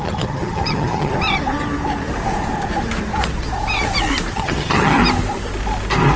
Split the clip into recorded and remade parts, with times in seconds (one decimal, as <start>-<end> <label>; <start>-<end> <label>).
0.0-1.1 remade; 1.1-4.3 recorded; 4.3-5.0 remade; 5.0-6.2 recorded